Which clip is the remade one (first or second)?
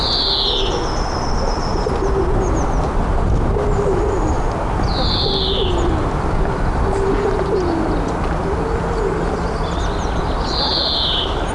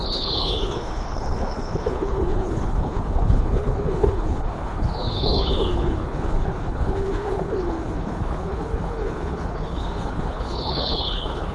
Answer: second